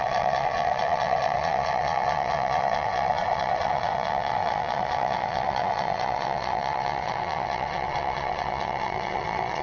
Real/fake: fake